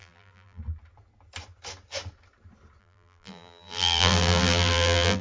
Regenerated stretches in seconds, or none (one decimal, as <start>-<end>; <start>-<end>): 0.0-0.6; 2.8-5.2